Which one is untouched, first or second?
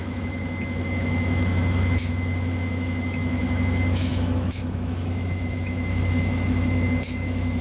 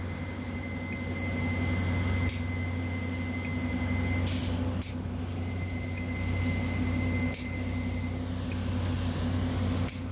second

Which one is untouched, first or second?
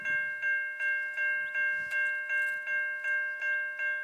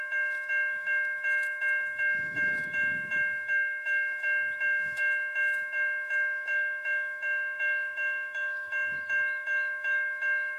first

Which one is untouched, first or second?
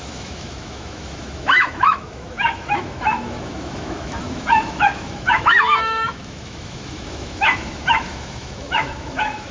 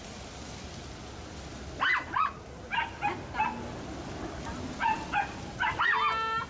second